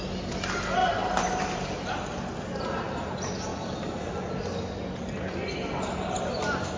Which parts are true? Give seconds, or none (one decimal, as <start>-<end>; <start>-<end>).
0.0-3.5; 4.3-6.8